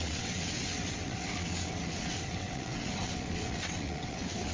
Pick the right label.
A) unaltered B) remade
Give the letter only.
B